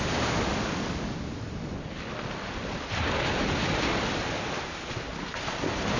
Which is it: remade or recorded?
recorded